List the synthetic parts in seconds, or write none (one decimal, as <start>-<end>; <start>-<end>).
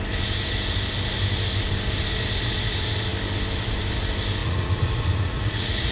4.4-5.9